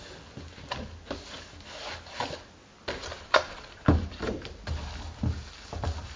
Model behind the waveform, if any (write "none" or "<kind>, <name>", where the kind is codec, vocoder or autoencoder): none